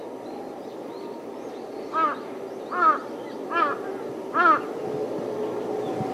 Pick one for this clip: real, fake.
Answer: real